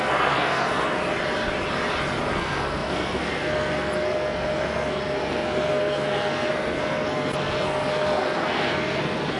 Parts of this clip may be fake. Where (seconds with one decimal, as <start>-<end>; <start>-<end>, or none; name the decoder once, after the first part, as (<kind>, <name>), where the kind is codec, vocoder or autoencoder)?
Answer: 0.0-1.0 (codec, SNAC); 2.3-9.4